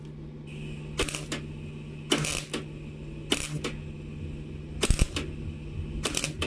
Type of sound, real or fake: real